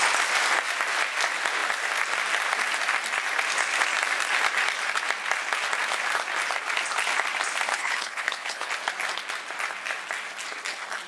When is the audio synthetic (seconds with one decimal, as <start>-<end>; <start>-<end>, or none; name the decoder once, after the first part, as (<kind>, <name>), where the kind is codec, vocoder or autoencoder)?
7.7-8.7 (codec, HILCodec)

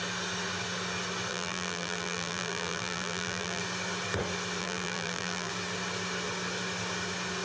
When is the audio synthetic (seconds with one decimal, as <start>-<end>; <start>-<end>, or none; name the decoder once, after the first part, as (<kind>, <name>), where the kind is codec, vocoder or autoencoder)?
1.3-3.6 (vocoder, BigVGAN v2); 4.6-5.5

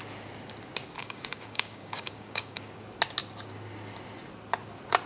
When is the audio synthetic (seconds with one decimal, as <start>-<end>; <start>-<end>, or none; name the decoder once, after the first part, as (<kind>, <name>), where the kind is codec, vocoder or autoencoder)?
1.0-2.8 (codec, DAC)

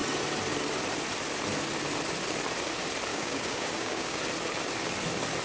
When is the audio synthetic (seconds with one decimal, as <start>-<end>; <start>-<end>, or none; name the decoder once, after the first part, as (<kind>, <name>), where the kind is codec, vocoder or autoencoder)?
3.1-4.2 (codec, DAC)

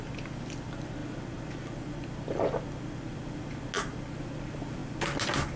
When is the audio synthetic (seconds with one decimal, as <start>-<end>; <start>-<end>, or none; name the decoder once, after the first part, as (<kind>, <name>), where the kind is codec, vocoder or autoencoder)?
none

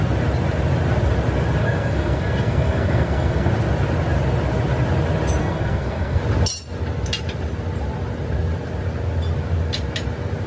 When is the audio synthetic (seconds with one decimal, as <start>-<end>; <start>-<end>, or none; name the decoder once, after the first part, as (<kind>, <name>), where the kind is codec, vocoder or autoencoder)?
1.6-3.5 (codec, SNAC); 5.4-6.2

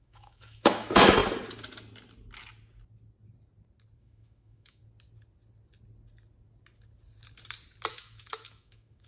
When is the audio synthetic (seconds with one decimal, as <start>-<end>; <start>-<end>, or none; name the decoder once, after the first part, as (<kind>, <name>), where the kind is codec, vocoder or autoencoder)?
0.0-1.2 (autoencoder, DAC-VAE); 4.0-4.8; 7.9-9.1